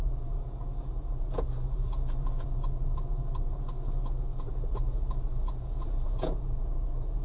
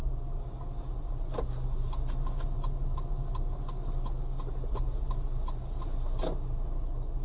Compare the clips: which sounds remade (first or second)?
first